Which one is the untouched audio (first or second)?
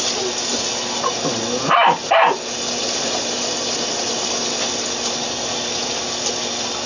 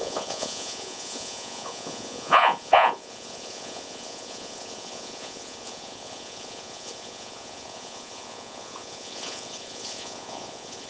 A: first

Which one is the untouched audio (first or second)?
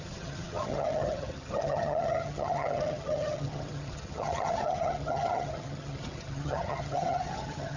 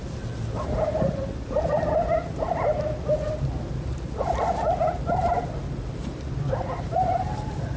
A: second